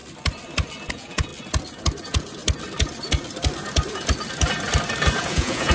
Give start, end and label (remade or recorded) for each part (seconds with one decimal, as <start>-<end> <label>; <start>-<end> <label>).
0.0-0.9 recorded; 0.9-1.3 remade; 1.3-2.0 recorded; 2.0-2.4 remade; 2.4-5.2 recorded; 5.2-5.7 remade